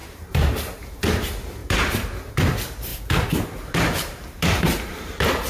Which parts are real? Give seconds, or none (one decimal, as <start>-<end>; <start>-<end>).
none